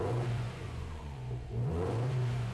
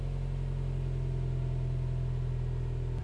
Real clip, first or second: second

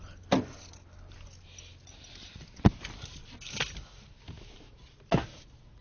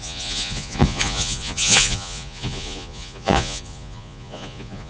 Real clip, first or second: first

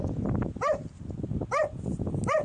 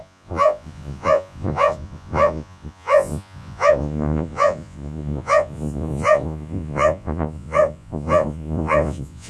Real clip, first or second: first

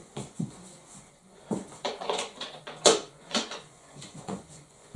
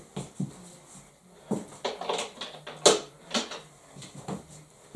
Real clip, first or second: second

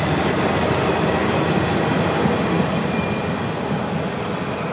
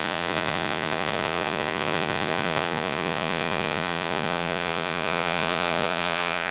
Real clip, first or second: first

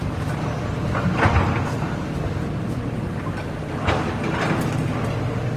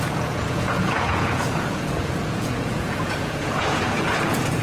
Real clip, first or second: first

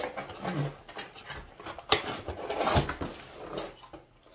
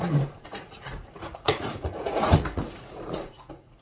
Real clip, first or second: first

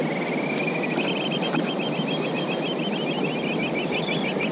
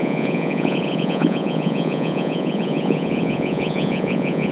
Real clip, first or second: first